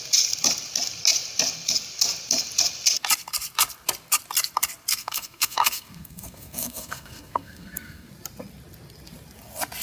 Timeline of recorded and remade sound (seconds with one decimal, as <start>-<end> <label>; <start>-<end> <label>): 0.0-4.9 recorded; 4.9-8.1 remade; 8.1-9.8 recorded